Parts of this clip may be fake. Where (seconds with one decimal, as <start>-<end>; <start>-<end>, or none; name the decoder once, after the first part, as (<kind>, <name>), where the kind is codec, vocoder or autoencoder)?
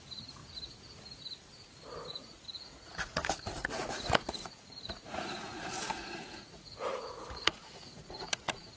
0.0-0.4 (vocoder, Vocos); 2.1-8.8